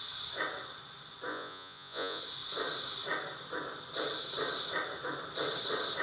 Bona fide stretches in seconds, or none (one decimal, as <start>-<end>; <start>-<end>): 0.0-1.3; 2.2-6.0